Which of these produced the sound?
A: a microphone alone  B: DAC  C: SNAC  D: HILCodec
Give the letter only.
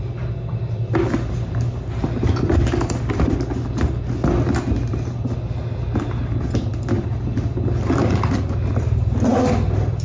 A